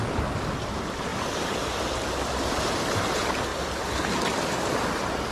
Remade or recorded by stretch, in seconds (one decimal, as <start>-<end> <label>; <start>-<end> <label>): 0.0-1.1 recorded; 1.1-3.0 remade; 3.0-3.5 recorded; 3.5-4.1 remade; 4.1-5.3 recorded